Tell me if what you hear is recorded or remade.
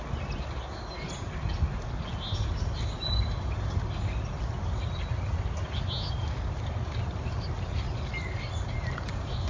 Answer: recorded